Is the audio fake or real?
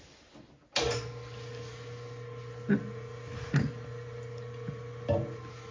real